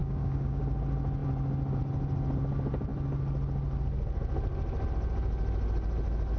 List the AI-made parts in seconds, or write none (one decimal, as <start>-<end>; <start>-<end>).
0.0-0.6